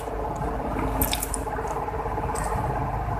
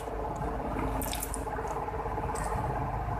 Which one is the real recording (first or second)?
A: second